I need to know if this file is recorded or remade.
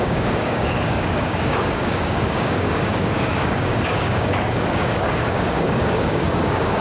remade